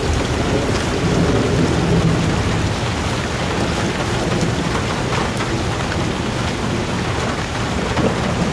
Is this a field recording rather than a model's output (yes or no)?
yes